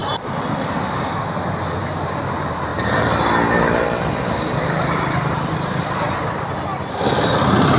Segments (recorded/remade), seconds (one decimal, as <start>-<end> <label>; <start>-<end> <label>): 0.0-7.8 recorded